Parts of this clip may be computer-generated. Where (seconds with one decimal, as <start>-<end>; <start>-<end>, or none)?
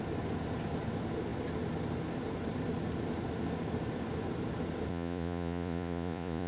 4.9-6.5